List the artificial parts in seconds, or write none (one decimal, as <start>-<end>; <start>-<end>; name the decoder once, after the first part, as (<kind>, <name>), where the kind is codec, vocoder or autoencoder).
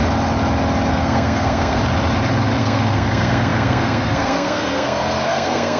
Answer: 0.9-1.8 (codec, SNAC); 2.6-5.8